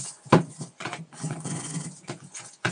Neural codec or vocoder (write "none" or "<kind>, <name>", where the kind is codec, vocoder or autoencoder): vocoder, Vocos